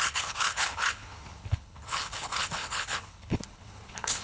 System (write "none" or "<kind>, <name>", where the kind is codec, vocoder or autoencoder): codec, HILCodec